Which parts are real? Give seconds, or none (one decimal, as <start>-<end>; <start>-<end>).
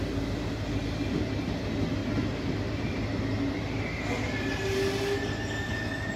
0.0-6.2